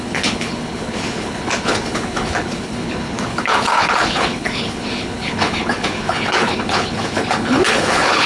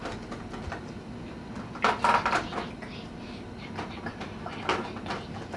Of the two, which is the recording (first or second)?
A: second